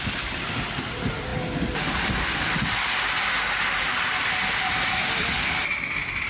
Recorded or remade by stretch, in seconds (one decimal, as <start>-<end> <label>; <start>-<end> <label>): 0.0-6.3 recorded